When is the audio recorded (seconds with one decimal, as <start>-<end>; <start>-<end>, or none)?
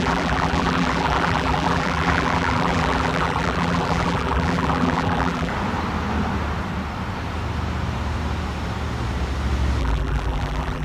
5.5-9.8